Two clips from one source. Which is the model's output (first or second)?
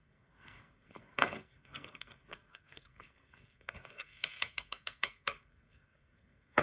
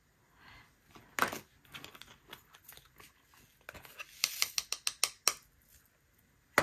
first